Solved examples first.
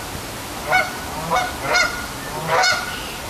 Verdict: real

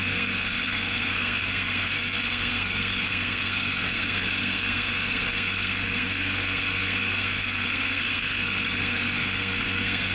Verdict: fake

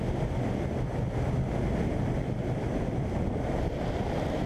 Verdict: real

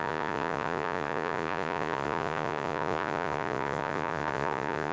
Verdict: fake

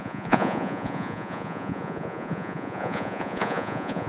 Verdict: fake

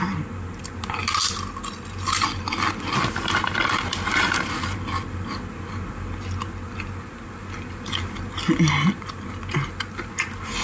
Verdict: real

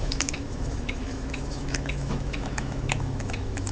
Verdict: fake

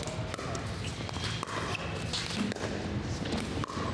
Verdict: real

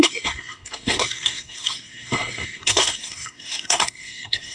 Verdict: fake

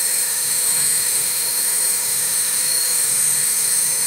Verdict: fake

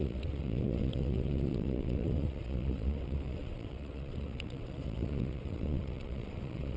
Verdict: fake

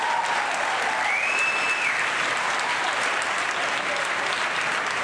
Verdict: real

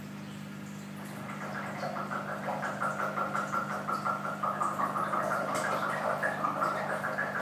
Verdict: real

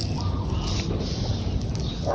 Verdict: real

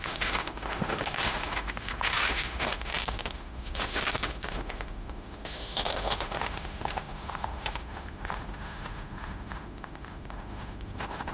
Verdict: fake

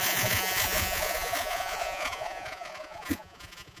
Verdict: fake